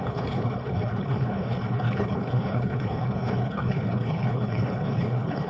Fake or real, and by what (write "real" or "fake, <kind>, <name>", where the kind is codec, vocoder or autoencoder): fake, codec, HILCodec